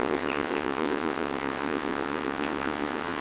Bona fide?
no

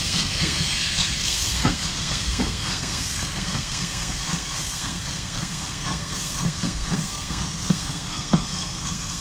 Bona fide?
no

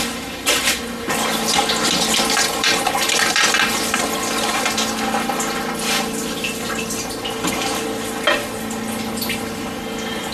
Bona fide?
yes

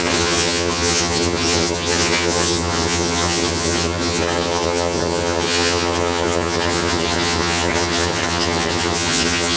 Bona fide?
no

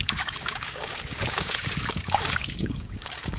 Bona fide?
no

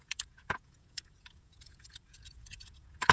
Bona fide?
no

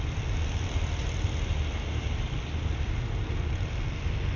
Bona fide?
yes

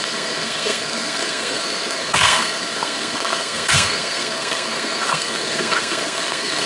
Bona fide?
no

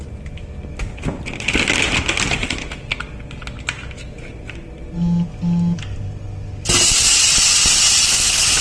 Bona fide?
yes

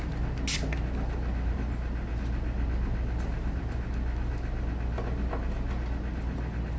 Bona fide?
yes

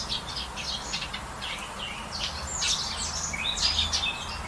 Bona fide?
yes